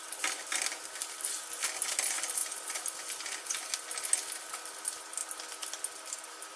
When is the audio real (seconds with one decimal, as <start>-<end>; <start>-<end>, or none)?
0.0-6.6